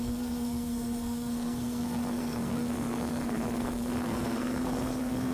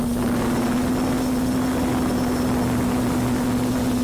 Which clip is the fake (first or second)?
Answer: first